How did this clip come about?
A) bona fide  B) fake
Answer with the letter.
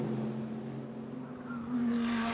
A